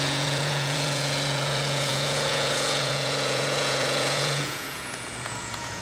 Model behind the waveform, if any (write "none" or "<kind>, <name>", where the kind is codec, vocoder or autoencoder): vocoder, Vocos